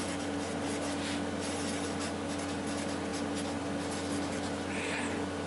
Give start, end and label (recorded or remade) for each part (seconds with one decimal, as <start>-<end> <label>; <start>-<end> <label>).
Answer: 0.0-5.5 recorded